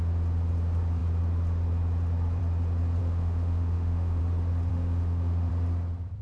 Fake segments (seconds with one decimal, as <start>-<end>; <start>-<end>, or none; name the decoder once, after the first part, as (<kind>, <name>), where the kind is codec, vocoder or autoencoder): 3.0-4.2 (autoencoder, DAC-VAE); 4.7-5.5